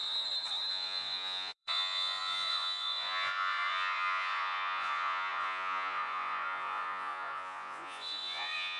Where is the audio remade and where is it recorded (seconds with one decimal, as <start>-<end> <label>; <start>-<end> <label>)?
0.0-0.7 recorded; 0.7-8.8 remade